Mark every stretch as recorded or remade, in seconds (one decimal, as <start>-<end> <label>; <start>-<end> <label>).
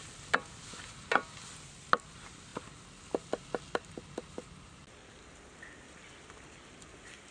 0.0-7.3 recorded